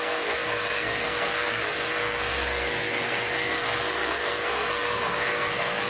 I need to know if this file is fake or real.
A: fake